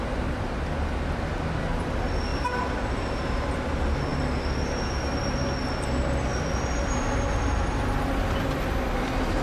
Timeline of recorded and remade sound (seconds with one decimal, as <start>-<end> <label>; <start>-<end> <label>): 0.0-9.4 recorded